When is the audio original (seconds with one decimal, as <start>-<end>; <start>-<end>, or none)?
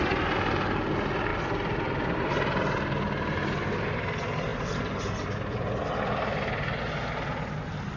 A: 0.0-1.3; 2.3-8.0